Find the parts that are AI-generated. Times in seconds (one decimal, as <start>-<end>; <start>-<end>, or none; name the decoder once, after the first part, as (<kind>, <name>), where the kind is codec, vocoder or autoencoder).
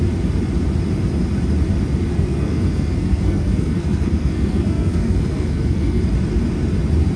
2.1-6.0 (codec, SNAC)